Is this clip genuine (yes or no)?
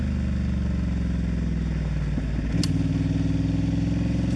yes